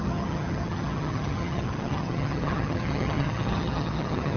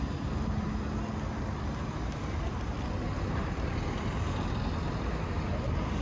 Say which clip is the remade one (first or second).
first